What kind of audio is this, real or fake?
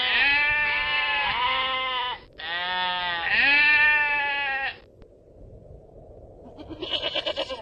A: real